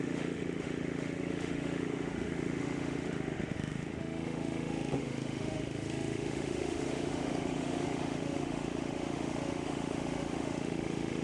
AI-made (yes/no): yes